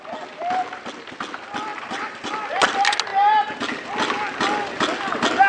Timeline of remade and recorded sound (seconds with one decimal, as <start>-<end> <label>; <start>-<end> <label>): 0.0-1.7 recorded; 1.7-2.3 remade; 2.3-5.5 recorded